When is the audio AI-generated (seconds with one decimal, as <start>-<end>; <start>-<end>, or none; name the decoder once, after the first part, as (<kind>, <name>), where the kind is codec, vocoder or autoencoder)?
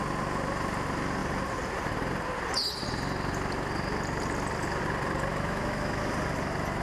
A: 5.3-6.0 (autoencoder, DAC-VAE)